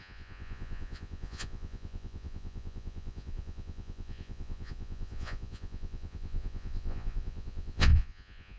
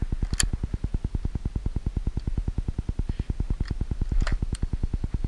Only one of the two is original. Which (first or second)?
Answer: second